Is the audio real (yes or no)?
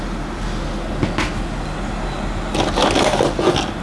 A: yes